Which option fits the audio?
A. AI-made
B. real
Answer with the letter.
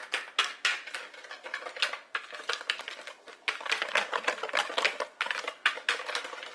B